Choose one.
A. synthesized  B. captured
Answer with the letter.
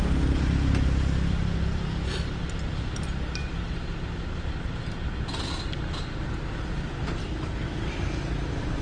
B